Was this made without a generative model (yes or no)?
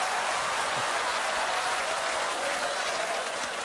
no